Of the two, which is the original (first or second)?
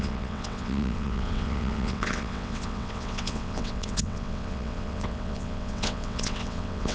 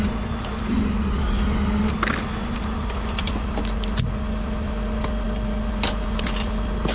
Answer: second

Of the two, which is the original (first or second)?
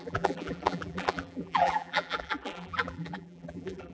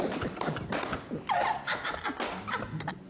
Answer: second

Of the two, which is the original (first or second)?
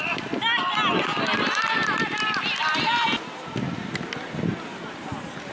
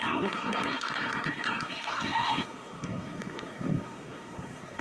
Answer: first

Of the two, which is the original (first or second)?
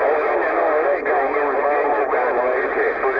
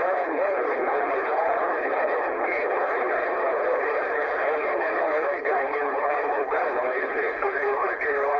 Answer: first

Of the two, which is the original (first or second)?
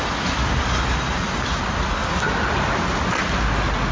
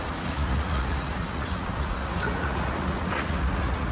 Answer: first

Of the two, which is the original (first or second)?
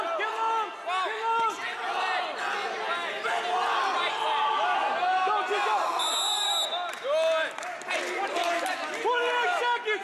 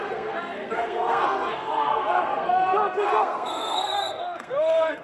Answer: first